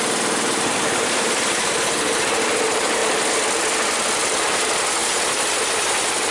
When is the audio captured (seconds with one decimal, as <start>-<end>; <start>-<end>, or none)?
3.0-4.4